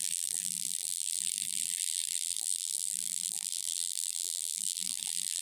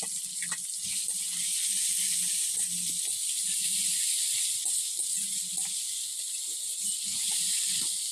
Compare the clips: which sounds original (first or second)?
second